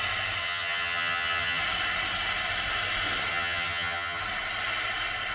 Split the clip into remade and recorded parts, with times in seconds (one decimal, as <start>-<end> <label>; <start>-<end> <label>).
0.0-0.4 recorded; 0.4-1.6 remade; 1.6-3.3 recorded; 3.3-4.2 remade; 4.2-5.3 recorded